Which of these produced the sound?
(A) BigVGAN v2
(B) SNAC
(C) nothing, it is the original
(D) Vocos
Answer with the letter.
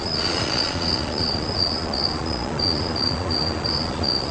D